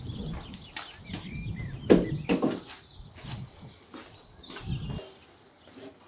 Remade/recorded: recorded